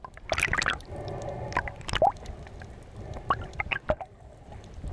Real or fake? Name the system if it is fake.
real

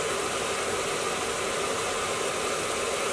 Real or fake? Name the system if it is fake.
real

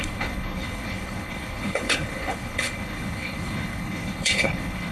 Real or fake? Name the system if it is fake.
fake, codec, HILCodec